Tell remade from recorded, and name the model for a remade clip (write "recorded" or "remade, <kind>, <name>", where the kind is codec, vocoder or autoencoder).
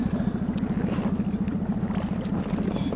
recorded